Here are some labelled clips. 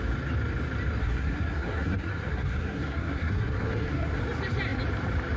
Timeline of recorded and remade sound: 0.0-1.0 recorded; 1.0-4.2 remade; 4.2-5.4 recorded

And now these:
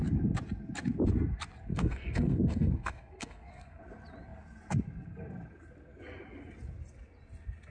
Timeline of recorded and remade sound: 0.0-1.7 recorded; 1.7-3.8 remade; 3.8-7.7 recorded

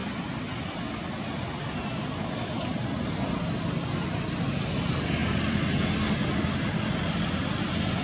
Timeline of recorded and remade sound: 0.0-8.0 recorded

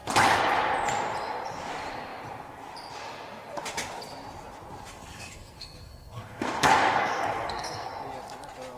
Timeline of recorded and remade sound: 0.0-4.9 recorded; 4.9-7.9 remade; 7.9-8.8 recorded

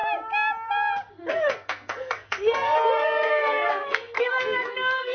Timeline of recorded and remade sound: 0.0-1.3 recorded; 1.3-5.1 remade

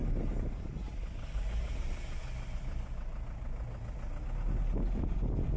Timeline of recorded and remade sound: 0.0-5.6 recorded